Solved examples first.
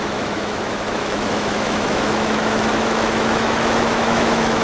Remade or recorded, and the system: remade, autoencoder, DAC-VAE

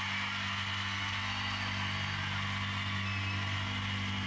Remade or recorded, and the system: recorded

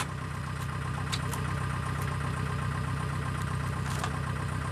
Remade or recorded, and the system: recorded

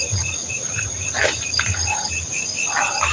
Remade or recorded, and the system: recorded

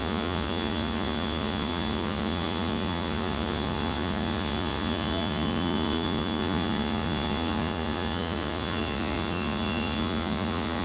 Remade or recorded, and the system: remade, vocoder, Vocos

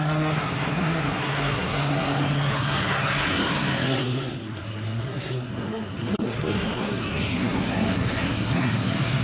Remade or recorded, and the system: remade, codec, SNAC